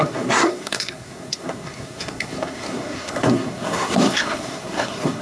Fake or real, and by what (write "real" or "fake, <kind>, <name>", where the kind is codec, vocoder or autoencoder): fake, codec, SNAC